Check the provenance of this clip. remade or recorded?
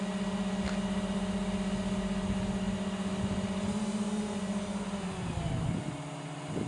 recorded